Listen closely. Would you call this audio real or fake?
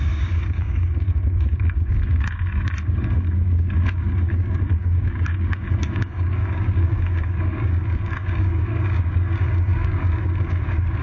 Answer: fake